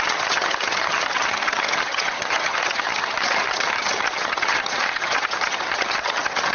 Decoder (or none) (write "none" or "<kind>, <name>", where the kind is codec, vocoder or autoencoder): vocoder, HiFi-GAN